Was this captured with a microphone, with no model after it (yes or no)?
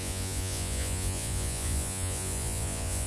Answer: no